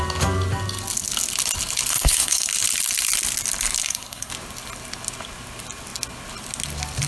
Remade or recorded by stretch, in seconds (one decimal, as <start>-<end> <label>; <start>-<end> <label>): 0.0-1.9 recorded; 1.9-2.5 remade; 2.5-3.8 recorded; 3.8-4.3 remade; 4.3-7.1 recorded

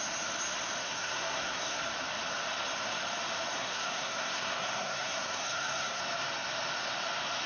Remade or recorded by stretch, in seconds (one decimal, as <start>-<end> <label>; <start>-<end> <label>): 0.0-0.8 recorded; 0.8-1.8 remade; 1.8-3.5 recorded; 3.5-6.0 remade; 6.0-7.5 recorded

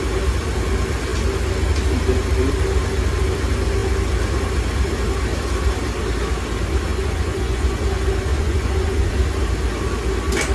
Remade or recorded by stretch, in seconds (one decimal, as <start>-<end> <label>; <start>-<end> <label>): 0.0-6.9 recorded; 6.9-7.8 remade; 7.8-8.3 recorded; 8.3-9.1 remade; 9.1-10.5 recorded

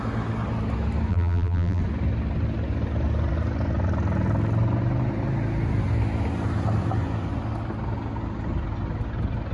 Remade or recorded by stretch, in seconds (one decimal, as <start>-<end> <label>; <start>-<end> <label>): 0.0-1.1 recorded; 1.1-1.8 remade; 1.8-9.5 recorded

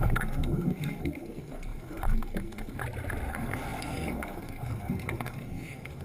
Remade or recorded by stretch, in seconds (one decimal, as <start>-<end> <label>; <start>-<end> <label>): 0.0-2.8 remade; 2.8-3.3 recorded; 3.3-6.0 remade